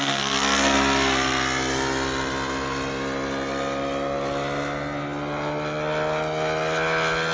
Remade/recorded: recorded